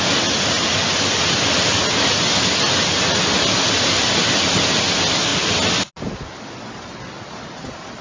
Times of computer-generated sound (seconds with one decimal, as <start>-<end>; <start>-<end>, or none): none